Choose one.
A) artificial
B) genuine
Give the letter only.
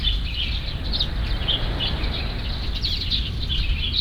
B